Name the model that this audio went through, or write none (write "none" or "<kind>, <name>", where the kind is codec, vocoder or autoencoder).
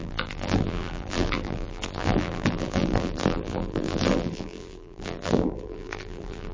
vocoder, BigVGAN v2